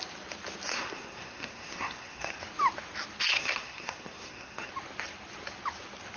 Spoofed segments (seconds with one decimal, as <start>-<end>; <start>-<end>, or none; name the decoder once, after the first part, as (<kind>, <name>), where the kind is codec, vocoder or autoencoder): 0.7-2.4 (codec, SNAC); 3.3-4.7